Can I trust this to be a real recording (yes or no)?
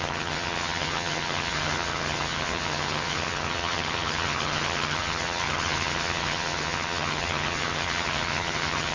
no